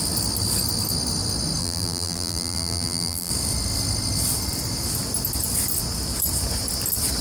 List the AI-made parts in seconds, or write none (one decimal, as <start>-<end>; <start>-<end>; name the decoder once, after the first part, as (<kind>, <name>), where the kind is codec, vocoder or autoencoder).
1.6-3.3 (vocoder, BigVGAN v2)